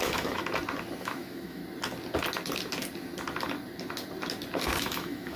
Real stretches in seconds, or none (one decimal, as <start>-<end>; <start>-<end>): 0.4-1.0; 1.6-4.8